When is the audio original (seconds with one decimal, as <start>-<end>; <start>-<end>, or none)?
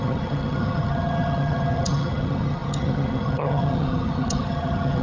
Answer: none